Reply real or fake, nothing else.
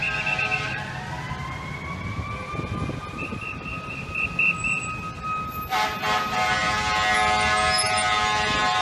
real